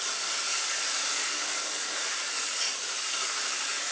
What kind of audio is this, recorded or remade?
remade